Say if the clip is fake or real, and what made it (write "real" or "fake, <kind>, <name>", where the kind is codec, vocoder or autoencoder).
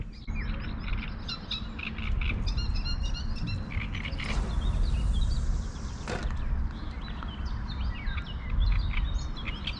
real